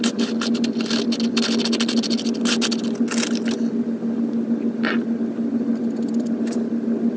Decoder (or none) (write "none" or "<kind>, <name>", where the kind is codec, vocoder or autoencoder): none